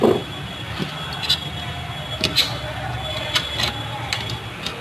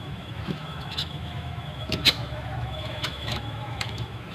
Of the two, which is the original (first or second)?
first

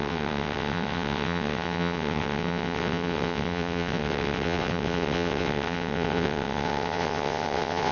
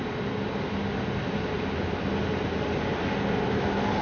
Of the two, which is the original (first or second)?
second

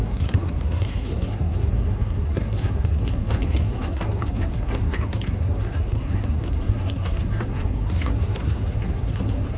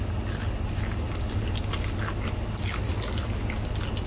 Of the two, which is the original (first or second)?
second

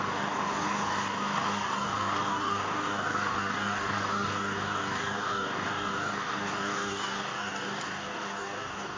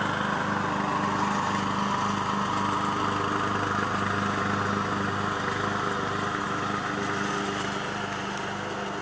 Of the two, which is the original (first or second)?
second